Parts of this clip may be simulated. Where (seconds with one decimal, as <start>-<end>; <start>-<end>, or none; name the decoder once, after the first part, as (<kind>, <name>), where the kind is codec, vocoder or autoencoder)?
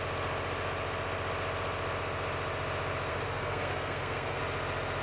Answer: 3.1-4.4 (codec, SNAC)